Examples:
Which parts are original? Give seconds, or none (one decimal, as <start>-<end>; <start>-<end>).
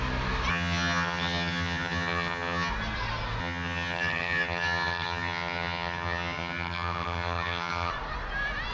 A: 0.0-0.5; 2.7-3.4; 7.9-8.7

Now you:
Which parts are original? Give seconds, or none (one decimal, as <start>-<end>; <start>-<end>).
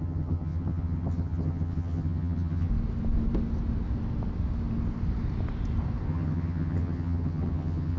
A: 2.7-6.1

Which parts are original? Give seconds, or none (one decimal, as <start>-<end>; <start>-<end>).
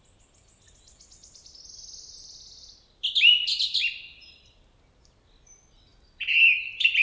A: 0.0-7.0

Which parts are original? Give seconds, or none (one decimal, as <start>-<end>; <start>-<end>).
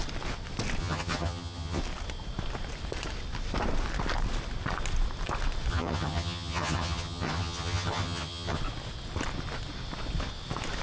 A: 0.0-0.8; 1.8-5.7; 8.6-10.8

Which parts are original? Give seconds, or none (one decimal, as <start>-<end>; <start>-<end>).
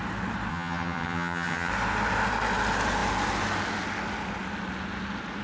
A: 0.0-0.5; 1.7-5.4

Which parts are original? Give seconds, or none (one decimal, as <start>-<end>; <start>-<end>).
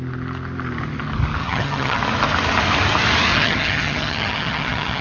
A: 0.0-1.4; 2.0-3.3